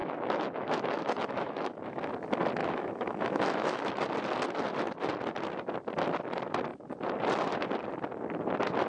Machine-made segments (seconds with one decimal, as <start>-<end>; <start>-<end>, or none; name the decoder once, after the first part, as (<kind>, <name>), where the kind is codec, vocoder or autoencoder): 0.0-2.1 (autoencoder, DAC-VAE); 2.6-3.9